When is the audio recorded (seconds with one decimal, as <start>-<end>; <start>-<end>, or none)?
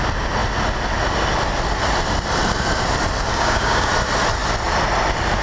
0.0-3.3; 3.9-5.4